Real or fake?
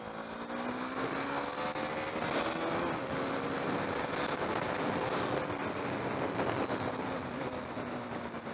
real